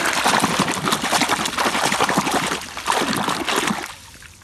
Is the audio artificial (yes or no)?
no